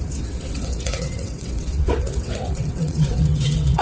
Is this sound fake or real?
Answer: fake